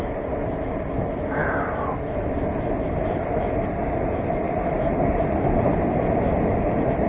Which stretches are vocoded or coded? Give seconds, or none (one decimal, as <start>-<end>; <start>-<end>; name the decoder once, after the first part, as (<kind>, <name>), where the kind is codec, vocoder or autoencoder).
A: none